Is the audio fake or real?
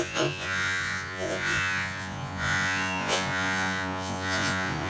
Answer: fake